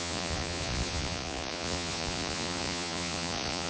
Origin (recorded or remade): remade